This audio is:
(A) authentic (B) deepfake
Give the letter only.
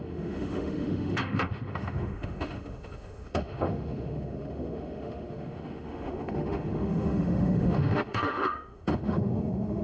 B